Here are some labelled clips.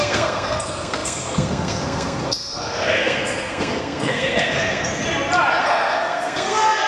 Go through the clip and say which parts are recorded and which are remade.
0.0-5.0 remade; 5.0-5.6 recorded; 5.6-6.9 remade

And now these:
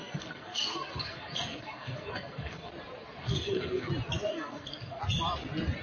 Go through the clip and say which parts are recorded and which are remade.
0.0-2.7 remade; 2.7-3.2 recorded; 3.2-3.9 remade; 3.9-4.3 recorded; 4.3-5.0 remade; 5.0-5.8 recorded

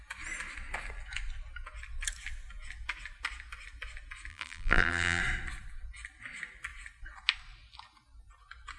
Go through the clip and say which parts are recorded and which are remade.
0.0-4.3 recorded; 4.3-5.2 remade; 5.2-8.8 recorded

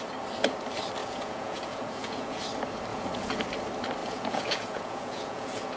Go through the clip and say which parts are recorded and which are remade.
0.0-1.0 recorded; 1.0-2.4 remade; 2.4-2.9 recorded; 2.9-3.4 remade; 3.4-4.0 recorded; 4.0-5.8 remade

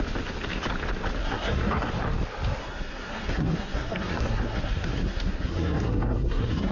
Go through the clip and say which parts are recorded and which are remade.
0.0-1.2 recorded; 1.2-1.9 remade; 1.9-2.6 recorded; 2.6-6.7 remade

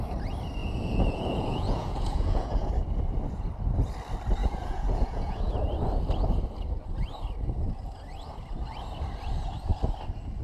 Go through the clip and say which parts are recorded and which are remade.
0.0-0.6 recorded; 0.6-2.7 remade; 2.7-4.4 recorded; 4.4-5.5 remade; 5.5-10.4 recorded